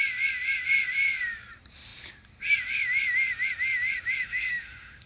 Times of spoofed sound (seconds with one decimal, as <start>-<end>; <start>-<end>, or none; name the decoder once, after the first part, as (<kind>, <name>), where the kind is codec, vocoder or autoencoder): 4.2-5.1 (autoencoder, DAC-VAE)